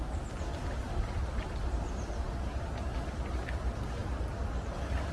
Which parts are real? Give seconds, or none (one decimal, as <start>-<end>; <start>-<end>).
0.0-5.1